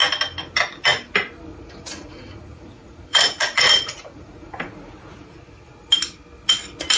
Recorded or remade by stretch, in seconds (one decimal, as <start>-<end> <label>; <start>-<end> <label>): 0.0-1.5 recorded; 1.5-5.7 remade; 5.7-7.0 recorded